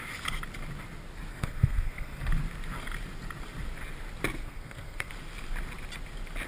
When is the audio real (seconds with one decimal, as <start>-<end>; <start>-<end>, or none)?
0.0-1.3; 2.3-4.4; 5.1-6.5

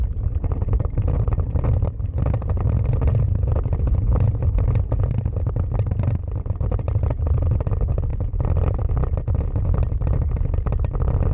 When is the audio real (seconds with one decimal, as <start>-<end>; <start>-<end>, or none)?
0.0-11.3

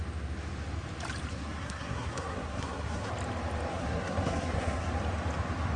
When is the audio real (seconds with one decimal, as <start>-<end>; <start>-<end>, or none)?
0.0-1.3; 3.1-3.7; 4.9-5.8

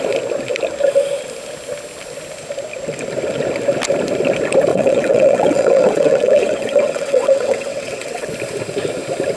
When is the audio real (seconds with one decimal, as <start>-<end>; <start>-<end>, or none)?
0.0-4.7; 8.3-9.4

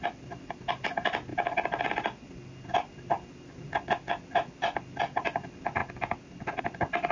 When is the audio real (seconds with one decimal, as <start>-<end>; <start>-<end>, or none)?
0.0-7.1